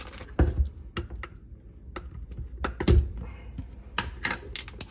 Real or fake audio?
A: real